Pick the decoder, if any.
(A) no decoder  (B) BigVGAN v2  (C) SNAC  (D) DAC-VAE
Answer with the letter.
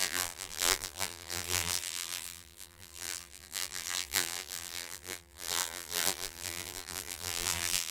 B